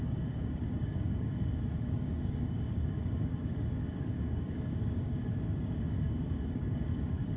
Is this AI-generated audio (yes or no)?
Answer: yes